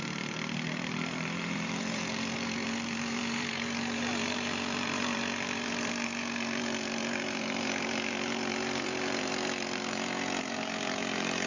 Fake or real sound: fake